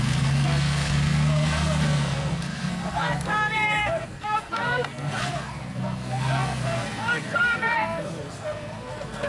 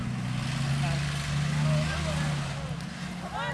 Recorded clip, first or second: second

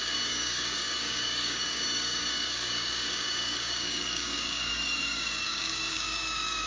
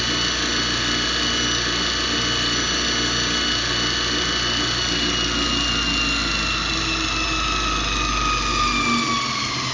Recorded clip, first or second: second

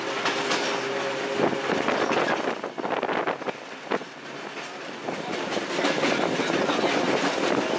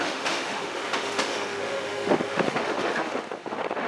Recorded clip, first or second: first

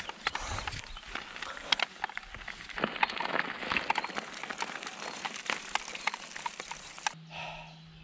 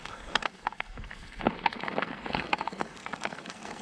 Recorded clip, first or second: first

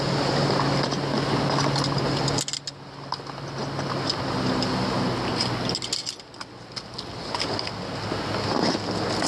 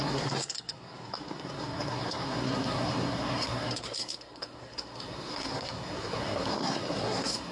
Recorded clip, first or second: first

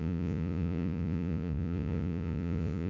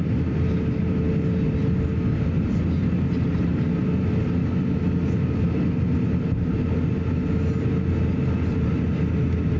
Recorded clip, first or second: second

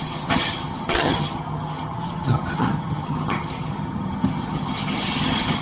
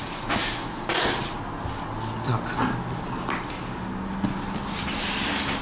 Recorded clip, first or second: second